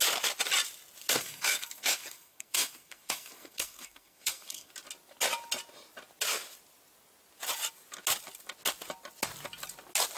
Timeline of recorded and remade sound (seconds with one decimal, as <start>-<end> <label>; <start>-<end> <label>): 0.0-1.0 recorded; 1.0-4.7 remade; 4.7-10.2 recorded